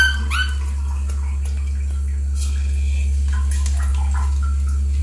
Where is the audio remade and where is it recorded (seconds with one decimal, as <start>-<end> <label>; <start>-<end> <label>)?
0.0-5.0 recorded